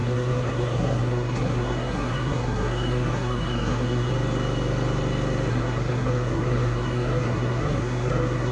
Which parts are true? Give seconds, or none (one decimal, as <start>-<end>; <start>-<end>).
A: 4.1-5.5